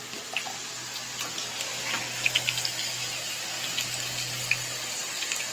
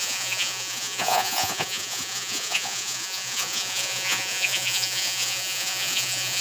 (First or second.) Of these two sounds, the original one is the first